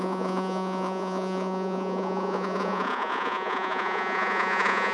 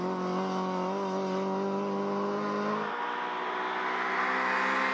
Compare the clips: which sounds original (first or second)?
second